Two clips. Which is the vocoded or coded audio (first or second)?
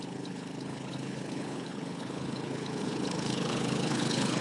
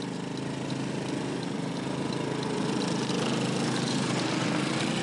first